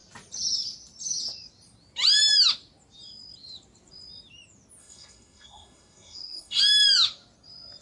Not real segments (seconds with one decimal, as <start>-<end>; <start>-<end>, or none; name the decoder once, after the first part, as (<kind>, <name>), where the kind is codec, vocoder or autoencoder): 4.8-6.6 (codec, SNAC)